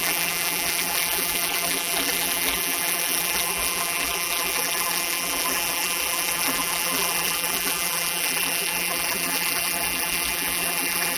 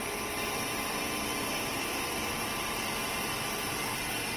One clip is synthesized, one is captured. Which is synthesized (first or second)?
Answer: first